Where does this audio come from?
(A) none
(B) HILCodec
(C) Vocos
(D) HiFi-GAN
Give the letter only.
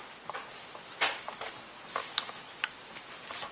A